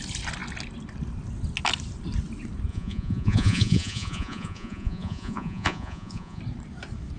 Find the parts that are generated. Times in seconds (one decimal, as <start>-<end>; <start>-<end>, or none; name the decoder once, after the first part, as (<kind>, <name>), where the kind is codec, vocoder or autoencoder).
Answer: 2.7-6.4 (vocoder, Vocos)